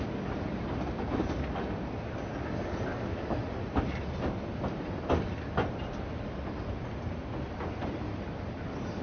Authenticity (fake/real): real